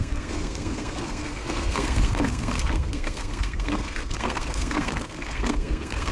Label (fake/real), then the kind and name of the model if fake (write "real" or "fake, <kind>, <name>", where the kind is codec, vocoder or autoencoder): fake, codec, SNAC